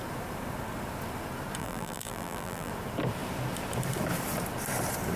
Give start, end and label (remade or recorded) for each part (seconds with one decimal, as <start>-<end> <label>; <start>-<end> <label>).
0.0-1.6 recorded; 1.6-2.7 remade; 2.7-5.2 recorded